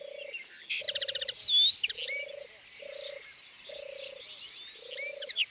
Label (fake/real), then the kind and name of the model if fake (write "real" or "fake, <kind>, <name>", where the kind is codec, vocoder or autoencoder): real